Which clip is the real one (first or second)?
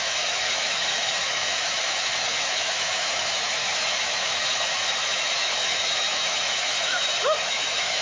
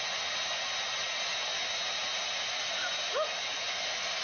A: second